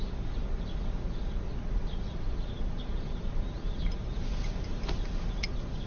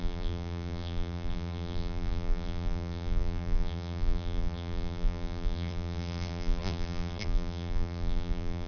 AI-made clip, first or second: second